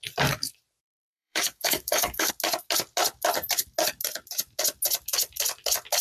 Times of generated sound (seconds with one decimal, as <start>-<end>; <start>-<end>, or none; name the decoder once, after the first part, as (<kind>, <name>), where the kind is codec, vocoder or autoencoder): 0.8-2.3 (codec, DAC)